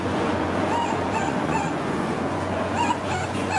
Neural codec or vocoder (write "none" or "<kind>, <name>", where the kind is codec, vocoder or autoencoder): vocoder, Vocos